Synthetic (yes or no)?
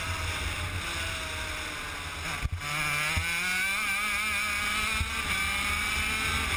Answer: no